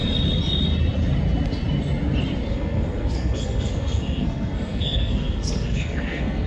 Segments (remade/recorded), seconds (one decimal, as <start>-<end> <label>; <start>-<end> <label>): 0.0-2.5 recorded; 2.5-6.5 remade